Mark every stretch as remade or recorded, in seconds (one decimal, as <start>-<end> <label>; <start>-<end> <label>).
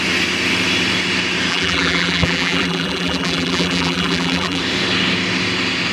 0.0-1.5 recorded; 1.5-4.6 remade; 4.6-5.9 recorded